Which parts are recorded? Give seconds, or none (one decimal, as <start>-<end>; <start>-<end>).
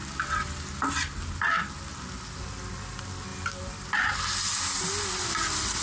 0.9-3.3; 4.1-5.8